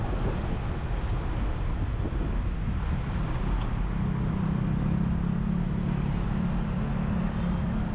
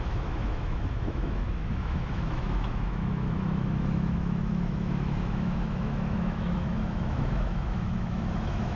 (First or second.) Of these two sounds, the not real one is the second